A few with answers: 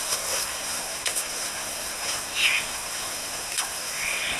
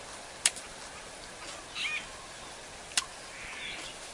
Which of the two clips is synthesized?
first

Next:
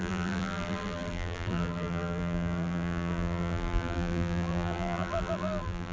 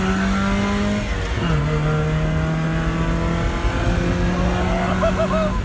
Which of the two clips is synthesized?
first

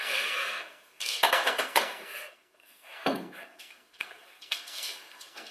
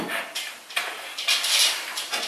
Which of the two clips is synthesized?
first